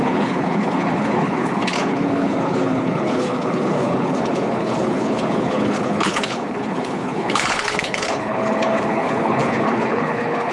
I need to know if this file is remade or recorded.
remade